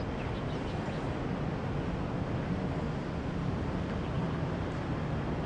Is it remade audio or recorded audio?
recorded